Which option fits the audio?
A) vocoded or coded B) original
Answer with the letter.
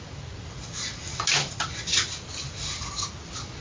B